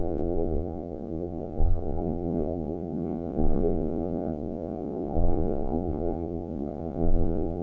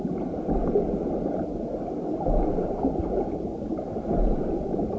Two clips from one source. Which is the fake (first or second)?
first